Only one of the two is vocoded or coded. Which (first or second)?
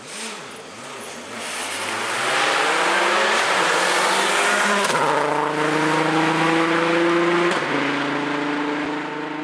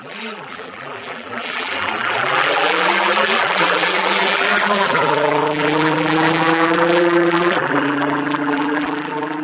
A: second